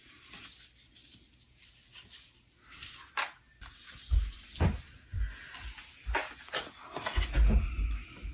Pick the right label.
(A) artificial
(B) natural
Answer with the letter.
B